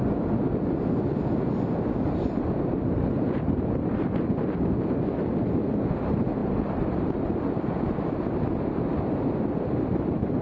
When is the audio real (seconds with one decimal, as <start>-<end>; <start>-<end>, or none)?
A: 0.0-6.4; 7.2-10.4